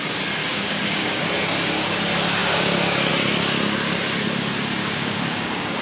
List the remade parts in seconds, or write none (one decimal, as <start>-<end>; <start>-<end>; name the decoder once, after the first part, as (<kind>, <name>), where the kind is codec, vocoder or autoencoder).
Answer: 0.4-1.3 (codec, DAC); 2.4-3.1; 4.8-5.8

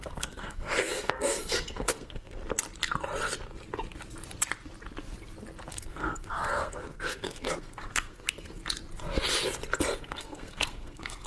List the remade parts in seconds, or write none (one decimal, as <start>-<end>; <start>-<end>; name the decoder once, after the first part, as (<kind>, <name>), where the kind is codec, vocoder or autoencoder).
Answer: 0.0-2.4 (codec, SNAC); 5.7-8.6; 10.0-11.3

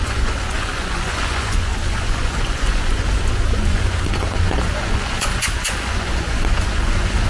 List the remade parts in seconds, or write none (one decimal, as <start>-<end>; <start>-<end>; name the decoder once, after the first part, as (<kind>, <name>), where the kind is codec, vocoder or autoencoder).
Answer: 0.0-7.3 (vocoder, Vocos)